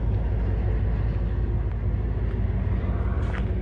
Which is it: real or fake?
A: real